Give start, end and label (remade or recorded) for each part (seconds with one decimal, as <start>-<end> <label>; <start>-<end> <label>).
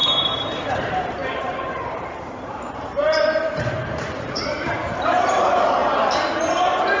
0.0-0.7 recorded; 0.7-5.8 remade; 5.8-7.0 recorded